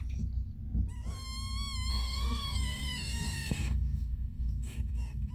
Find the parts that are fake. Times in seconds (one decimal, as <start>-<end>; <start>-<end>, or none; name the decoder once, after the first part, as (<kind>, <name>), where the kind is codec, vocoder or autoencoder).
1.9-5.3 (codec, DAC)